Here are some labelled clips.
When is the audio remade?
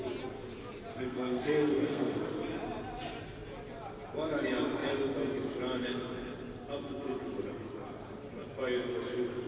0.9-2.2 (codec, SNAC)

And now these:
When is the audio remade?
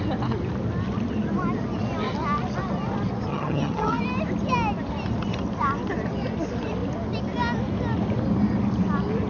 3.3-4.0 (vocoder, HiFi-GAN)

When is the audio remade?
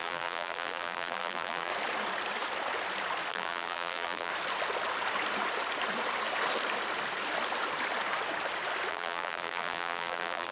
0.0-1.7 (vocoder, BigVGAN v2); 3.3-4.3; 8.9-10.5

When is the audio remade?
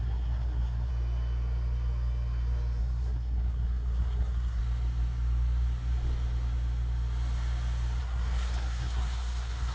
0.0-0.9 (codec, SNAC); 2.8-4.6; 8.0-9.7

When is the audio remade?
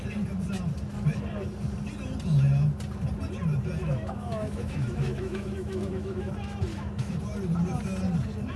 3.8-6.3 (autoencoder, DAC-VAE); 6.7-7.2